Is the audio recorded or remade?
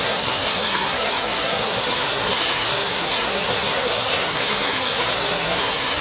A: remade